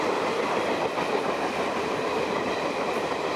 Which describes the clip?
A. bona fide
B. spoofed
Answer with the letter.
A